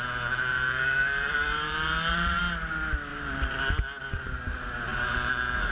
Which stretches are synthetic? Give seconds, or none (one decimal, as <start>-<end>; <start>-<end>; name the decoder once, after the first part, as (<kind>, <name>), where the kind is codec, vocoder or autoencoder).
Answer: 0.5-2.4 (vocoder, BigVGAN v2); 3.1-3.6; 4.9-5.7